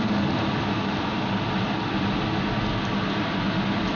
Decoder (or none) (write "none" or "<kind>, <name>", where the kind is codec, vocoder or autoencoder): none